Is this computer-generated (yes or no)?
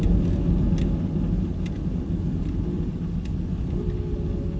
no